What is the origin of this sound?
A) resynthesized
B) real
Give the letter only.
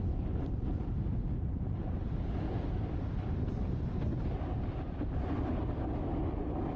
B